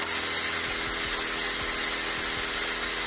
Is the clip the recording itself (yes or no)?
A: yes